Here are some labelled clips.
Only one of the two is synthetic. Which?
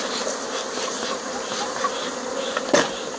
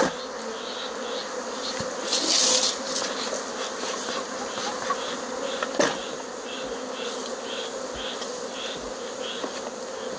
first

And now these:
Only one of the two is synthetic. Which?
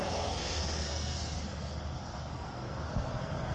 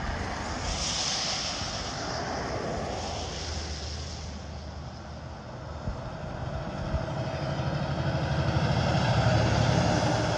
first